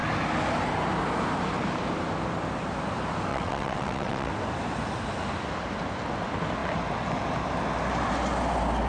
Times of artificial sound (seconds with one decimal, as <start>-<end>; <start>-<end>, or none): 3.3-4.3